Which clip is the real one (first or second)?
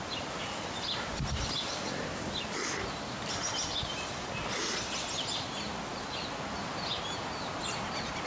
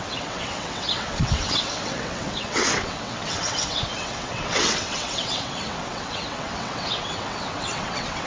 first